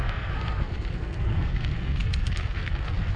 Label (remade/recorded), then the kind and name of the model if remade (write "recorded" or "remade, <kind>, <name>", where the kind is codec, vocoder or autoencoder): remade, codec, SNAC